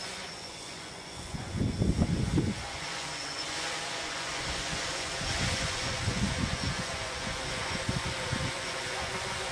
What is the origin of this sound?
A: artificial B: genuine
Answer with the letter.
A